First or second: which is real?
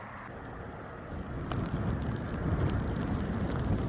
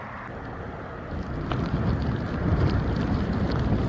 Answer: first